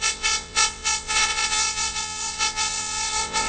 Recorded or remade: remade